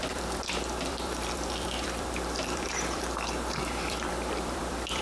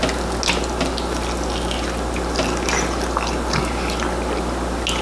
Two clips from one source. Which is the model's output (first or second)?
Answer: first